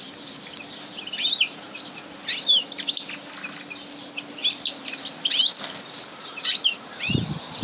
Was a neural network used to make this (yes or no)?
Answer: no